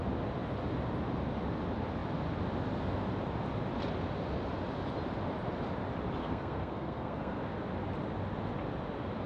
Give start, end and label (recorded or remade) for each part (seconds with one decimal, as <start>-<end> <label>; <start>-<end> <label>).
0.0-6.2 recorded; 6.2-7.4 remade; 7.4-9.3 recorded